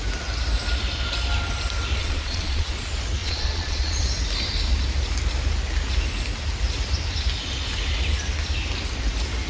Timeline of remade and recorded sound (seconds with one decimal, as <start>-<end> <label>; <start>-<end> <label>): 0.0-2.0 recorded; 2.0-2.7 remade; 2.7-3.2 recorded; 3.2-4.0 remade; 4.0-9.5 recorded